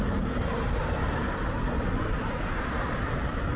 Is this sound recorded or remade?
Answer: remade